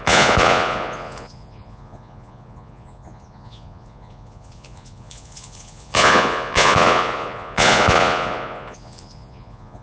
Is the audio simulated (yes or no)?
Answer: yes